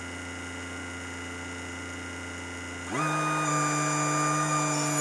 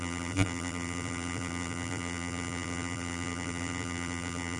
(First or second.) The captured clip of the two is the first